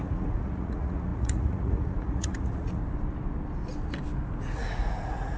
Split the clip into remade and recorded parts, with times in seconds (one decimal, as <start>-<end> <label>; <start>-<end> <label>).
0.0-2.8 remade; 2.8-4.4 recorded; 4.4-5.4 remade